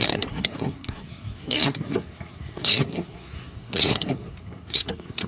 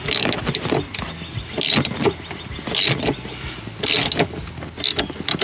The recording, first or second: second